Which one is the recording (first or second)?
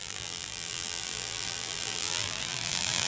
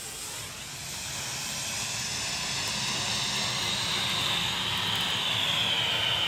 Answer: second